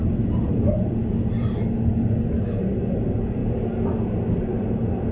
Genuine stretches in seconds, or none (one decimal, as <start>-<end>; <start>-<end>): 0.0-5.1